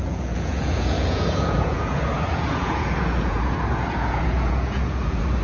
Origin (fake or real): fake